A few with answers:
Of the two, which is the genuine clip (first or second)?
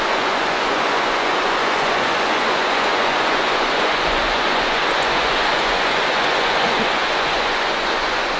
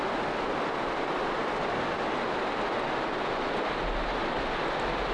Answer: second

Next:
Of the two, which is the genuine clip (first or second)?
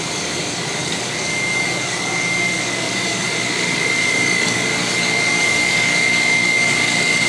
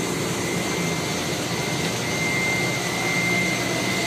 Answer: second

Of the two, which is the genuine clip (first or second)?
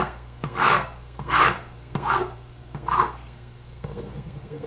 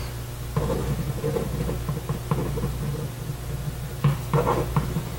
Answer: second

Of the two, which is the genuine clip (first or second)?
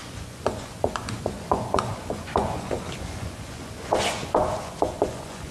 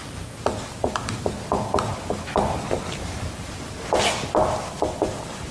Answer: second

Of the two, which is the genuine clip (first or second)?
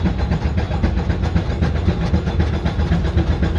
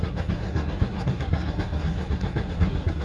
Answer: first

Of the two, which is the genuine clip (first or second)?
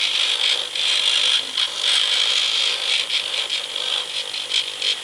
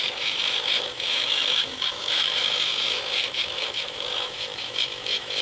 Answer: first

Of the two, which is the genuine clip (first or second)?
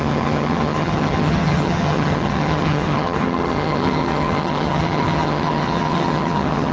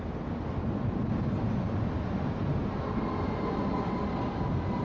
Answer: second